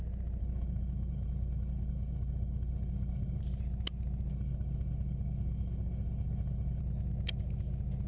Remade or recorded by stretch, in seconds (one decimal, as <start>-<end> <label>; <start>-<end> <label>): 0.0-0.4 recorded; 0.4-3.4 remade; 3.4-4.3 recorded; 4.3-6.8 remade; 6.8-8.1 recorded